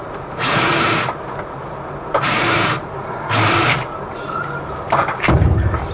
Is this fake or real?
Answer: fake